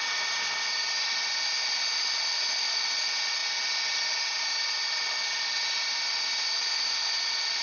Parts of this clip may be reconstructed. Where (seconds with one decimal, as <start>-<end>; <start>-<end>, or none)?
none